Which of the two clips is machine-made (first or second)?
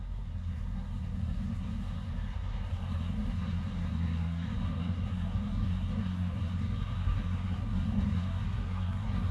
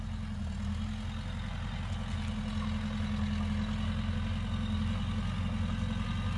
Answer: first